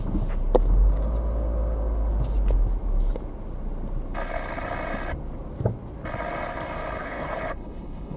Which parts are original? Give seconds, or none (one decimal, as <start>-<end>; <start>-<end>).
0.0-7.0